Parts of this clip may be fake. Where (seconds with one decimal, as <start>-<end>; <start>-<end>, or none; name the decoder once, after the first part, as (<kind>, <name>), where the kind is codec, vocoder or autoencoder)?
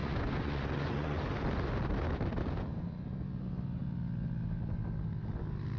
0.0-1.2 (vocoder, Vocos)